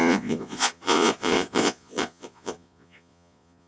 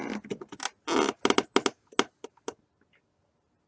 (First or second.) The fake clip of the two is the first